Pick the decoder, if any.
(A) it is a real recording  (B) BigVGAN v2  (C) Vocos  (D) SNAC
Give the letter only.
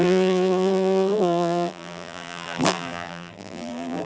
B